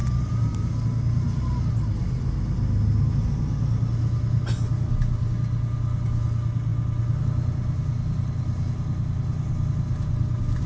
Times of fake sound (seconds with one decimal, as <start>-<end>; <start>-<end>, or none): none